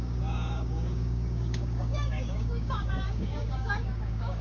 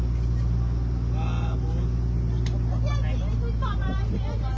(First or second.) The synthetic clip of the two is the first